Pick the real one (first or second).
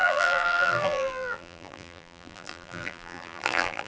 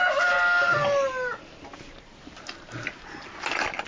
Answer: second